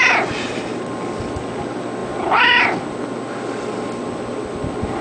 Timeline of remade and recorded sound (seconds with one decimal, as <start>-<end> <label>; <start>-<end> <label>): 0.0-5.0 recorded